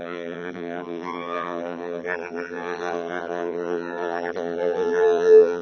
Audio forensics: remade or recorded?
remade